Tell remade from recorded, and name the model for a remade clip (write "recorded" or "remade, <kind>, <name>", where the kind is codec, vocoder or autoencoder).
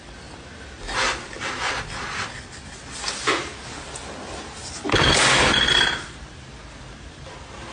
recorded